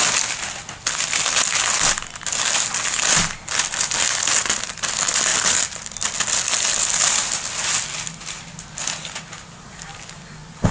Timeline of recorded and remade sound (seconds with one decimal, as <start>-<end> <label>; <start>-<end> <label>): 0.0-10.7 recorded